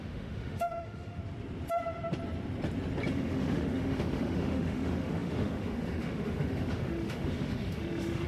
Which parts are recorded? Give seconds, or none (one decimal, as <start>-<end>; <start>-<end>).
1.2-3.1